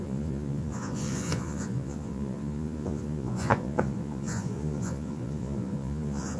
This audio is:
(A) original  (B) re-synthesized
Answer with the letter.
B